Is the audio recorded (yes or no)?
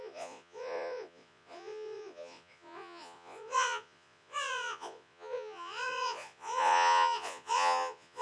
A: no